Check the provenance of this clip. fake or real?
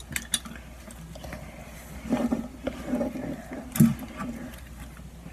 real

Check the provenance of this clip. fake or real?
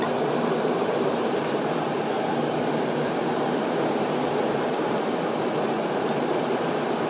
fake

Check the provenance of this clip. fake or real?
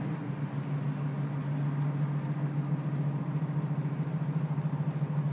real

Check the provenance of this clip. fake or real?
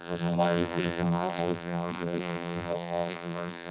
fake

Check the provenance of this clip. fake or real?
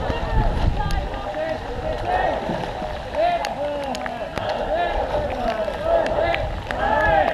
real